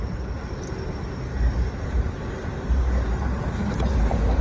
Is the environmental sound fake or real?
real